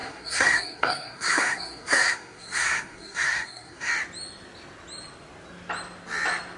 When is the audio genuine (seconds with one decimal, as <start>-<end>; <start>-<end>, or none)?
3.9-6.6